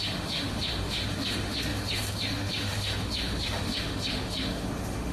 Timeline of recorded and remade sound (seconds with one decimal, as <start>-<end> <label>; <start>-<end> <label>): 0.0-5.1 remade